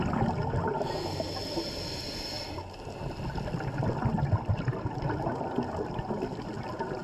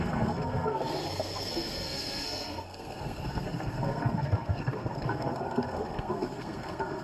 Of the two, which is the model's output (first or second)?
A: second